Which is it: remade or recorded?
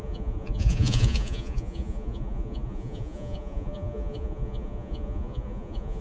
remade